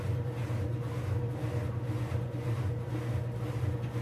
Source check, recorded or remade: recorded